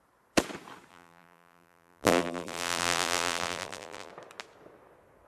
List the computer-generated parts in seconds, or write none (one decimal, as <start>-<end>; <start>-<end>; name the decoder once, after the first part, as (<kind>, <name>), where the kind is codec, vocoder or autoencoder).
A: 0.9-4.1 (vocoder, BigVGAN v2)